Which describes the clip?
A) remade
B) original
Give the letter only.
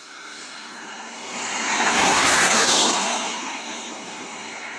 A